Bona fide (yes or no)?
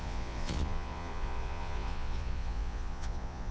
no